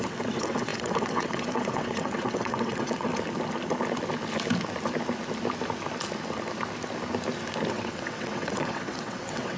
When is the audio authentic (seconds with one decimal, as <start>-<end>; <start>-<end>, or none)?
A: 3.1-7.7